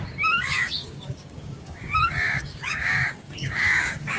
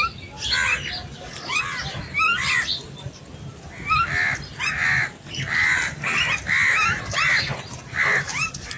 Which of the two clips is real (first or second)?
second